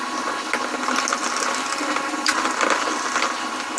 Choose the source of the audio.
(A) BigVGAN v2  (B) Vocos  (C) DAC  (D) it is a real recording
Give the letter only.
D